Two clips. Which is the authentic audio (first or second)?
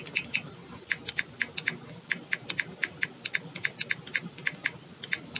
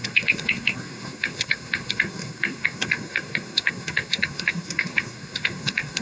first